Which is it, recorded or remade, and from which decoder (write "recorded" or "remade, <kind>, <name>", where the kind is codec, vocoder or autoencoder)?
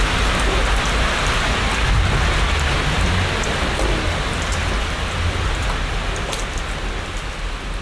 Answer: recorded